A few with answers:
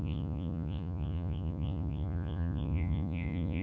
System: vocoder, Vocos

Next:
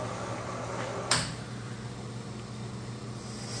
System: none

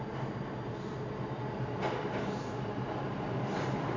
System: none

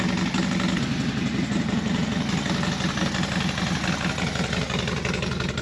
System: none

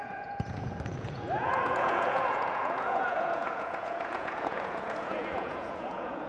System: vocoder, Vocos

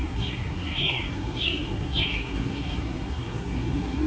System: codec, SNAC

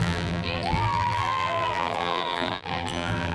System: vocoder, BigVGAN v2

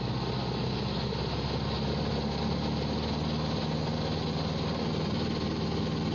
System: none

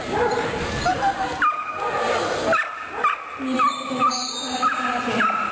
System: none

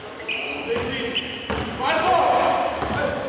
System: none